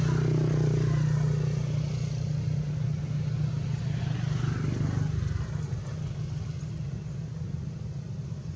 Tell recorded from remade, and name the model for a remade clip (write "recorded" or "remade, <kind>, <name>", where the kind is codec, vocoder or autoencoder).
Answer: recorded